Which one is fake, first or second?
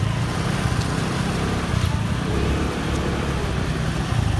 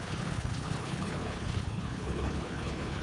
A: second